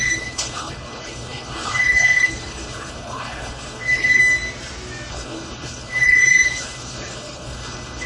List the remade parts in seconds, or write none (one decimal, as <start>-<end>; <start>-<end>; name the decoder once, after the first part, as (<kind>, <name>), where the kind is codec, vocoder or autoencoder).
0.0-4.2 (codec, HILCodec); 5.1-8.1